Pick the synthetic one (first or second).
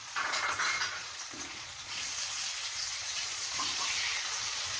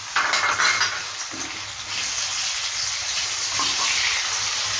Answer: first